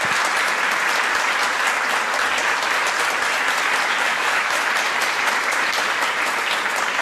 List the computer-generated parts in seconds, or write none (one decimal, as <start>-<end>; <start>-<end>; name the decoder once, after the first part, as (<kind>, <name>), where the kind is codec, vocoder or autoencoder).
4.1-4.7 (autoencoder, DAC-VAE)